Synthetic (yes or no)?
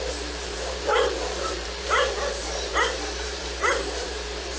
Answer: yes